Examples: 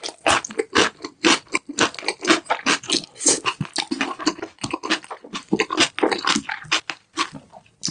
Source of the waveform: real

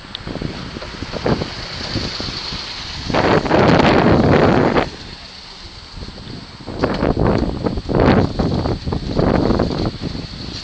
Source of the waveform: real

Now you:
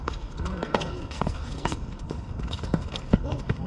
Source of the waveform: fake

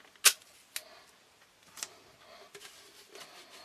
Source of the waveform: real